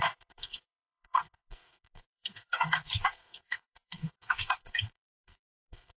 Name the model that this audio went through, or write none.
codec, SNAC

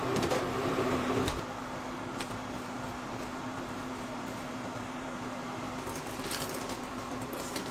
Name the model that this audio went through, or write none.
vocoder, BigVGAN v2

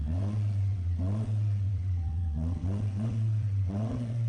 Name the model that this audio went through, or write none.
vocoder, WaveNeXt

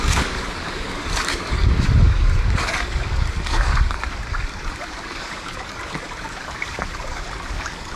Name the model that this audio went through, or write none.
codec, DAC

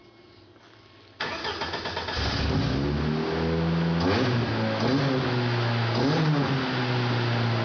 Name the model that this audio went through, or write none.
none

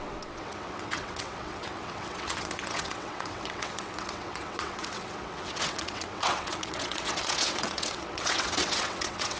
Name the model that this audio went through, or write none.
vocoder, WaveNeXt